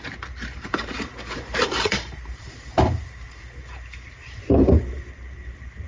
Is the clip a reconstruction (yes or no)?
yes